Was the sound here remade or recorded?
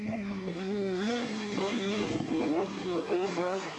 remade